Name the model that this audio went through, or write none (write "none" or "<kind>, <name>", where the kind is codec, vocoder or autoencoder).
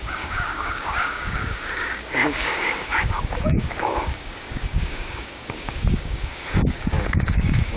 codec, DAC